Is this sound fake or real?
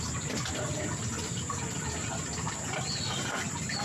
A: real